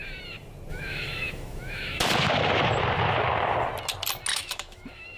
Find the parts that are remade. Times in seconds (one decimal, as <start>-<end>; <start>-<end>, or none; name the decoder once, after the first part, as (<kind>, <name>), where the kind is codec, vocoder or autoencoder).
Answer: 0.7-2.0 (autoencoder, DAC-VAE); 4.3-5.2